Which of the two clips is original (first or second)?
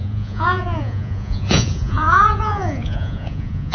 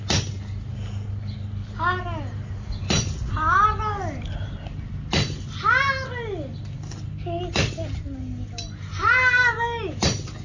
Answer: second